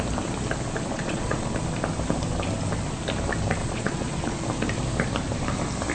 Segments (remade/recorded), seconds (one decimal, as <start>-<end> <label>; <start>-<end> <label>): 0.0-0.9 recorded; 0.9-1.5 remade; 1.5-3.6 recorded; 3.6-4.4 remade; 4.4-5.9 recorded